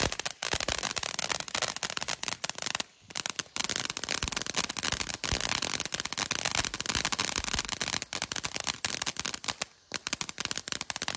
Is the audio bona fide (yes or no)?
yes